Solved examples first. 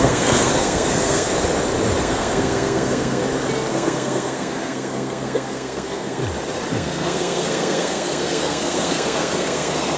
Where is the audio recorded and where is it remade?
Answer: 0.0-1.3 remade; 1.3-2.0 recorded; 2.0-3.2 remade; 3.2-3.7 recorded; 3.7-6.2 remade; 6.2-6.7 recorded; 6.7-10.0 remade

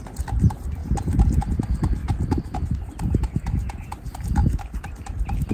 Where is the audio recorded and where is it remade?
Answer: 0.0-5.5 recorded

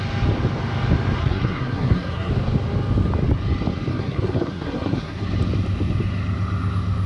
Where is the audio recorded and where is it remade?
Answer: 0.0-1.2 recorded; 1.2-2.3 remade; 2.3-3.9 recorded; 3.9-5.2 remade; 5.2-7.1 recorded